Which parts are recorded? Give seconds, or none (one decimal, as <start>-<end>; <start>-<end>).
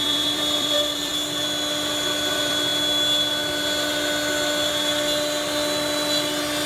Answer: 1.1-2.3; 2.7-6.7